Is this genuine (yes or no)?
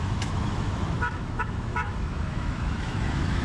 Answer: no